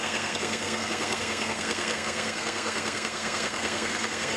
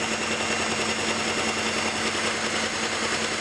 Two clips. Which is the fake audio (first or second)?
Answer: first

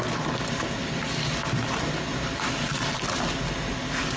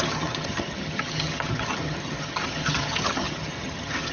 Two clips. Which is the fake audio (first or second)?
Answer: second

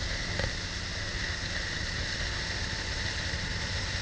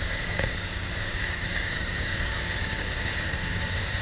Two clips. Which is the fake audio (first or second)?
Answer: second